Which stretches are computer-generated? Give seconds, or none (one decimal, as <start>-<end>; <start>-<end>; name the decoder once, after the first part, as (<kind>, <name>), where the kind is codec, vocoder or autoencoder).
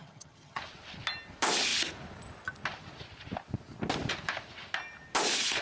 0.0-0.6 (vocoder, HiFi-GAN)